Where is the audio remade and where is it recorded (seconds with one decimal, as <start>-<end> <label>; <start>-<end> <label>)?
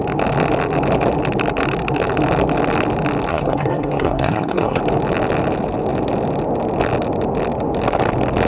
0.0-3.3 recorded; 3.3-4.8 remade; 4.8-8.5 recorded